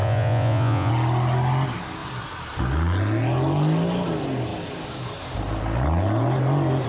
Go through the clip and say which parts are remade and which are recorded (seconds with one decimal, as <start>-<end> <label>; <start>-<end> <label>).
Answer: 0.0-0.9 remade; 0.9-6.9 recorded